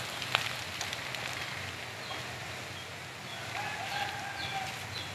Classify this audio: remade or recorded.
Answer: recorded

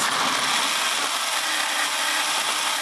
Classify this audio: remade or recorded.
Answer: recorded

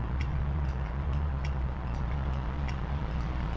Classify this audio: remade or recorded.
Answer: remade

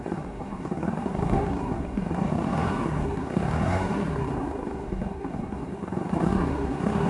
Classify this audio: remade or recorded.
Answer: remade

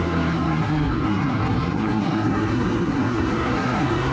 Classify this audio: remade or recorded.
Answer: remade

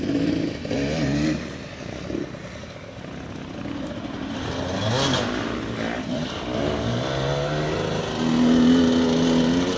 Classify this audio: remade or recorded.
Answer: recorded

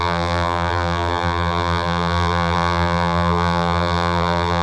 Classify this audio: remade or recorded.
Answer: remade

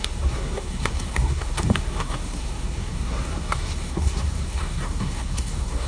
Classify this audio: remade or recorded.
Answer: remade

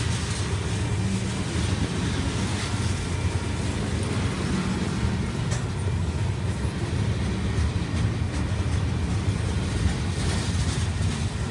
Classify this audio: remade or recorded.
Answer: recorded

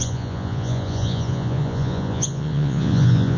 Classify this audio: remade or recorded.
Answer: remade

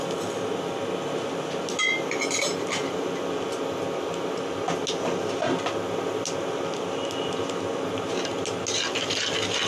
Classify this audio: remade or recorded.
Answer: recorded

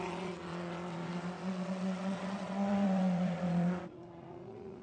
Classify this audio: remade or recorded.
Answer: remade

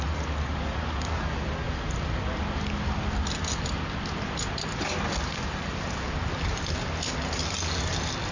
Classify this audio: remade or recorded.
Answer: recorded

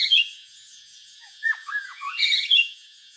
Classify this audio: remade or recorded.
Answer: remade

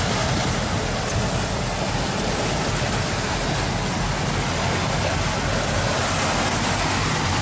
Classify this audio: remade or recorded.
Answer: recorded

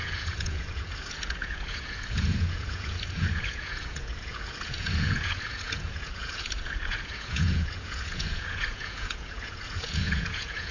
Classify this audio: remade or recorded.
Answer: remade